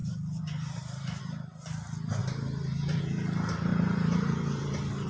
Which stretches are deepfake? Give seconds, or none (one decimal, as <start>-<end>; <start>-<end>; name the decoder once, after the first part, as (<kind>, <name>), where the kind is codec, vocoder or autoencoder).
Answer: 0.0-1.2 (vocoder, BigVGAN v2); 2.2-3.0; 3.7-5.1